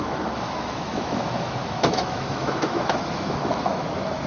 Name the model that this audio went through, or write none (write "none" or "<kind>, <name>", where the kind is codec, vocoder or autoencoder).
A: autoencoder, DAC-VAE